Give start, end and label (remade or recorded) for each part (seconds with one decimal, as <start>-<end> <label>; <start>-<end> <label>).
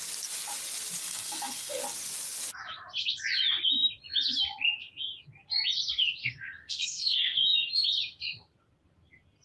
0.0-1.0 recorded; 1.0-1.8 remade; 1.8-6.2 recorded; 6.2-7.7 remade; 7.7-9.4 recorded